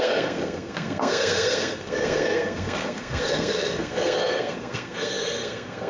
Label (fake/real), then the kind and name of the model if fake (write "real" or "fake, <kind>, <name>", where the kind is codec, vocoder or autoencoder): fake, codec, SNAC